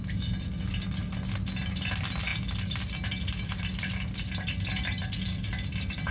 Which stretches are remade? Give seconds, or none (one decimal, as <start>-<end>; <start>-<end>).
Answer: none